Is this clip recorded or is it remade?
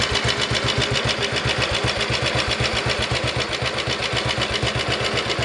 recorded